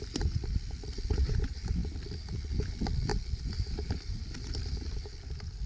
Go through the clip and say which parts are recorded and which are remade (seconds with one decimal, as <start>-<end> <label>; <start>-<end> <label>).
0.0-3.1 recorded; 3.1-4.6 remade; 4.6-5.7 recorded